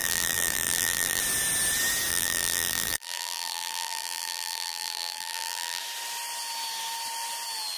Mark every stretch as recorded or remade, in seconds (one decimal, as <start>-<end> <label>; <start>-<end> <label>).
0.0-1.2 remade; 1.2-2.1 recorded; 2.1-5.8 remade; 5.8-7.8 recorded